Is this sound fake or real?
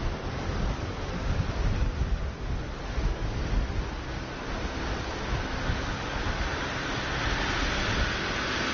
real